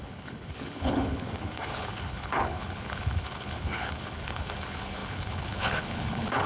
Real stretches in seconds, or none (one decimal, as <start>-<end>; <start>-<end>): none